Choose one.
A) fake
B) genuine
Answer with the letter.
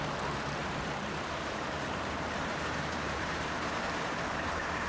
A